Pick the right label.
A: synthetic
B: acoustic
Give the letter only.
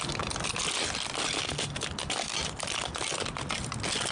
B